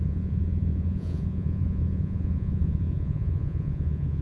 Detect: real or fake fake